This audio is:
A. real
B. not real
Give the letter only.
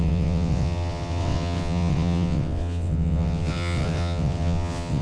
B